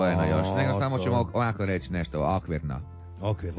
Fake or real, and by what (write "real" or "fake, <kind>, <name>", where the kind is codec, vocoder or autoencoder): real